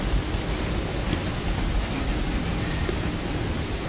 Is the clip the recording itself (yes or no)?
yes